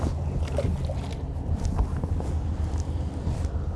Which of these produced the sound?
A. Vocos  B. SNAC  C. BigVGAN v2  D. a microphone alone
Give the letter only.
D